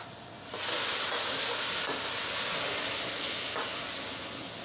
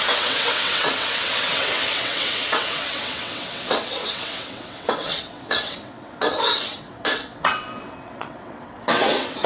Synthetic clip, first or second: second